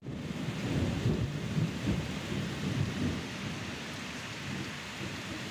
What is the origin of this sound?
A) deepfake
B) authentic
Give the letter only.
B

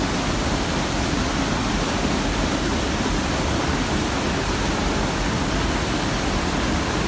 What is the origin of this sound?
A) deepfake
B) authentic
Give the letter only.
B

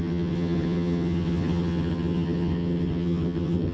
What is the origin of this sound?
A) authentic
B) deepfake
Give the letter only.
B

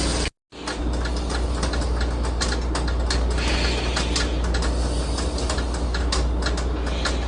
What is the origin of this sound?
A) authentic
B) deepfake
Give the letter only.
A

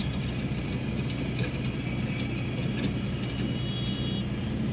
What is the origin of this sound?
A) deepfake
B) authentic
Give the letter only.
B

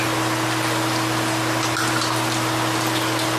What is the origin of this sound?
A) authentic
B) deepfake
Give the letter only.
A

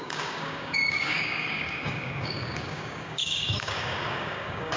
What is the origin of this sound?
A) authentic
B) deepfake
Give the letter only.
B